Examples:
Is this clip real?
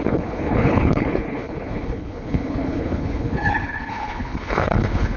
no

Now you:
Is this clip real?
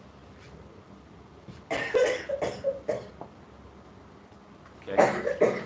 yes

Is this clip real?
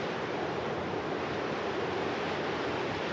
yes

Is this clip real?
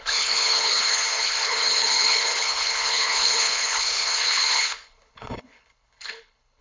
no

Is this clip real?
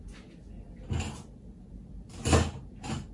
yes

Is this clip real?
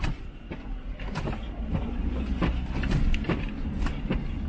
yes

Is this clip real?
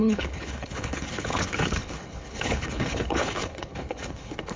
no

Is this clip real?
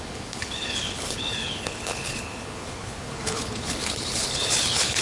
no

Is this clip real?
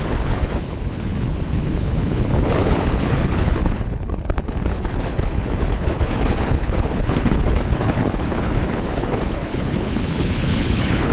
no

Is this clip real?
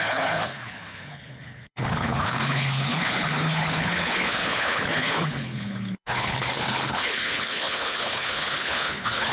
no